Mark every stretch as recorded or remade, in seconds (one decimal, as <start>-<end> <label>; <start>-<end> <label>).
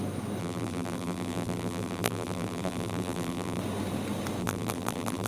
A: 0.0-0.4 recorded; 0.4-3.6 remade; 3.6-4.4 recorded; 4.4-5.3 remade